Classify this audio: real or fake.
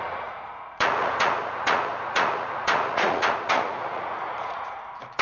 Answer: fake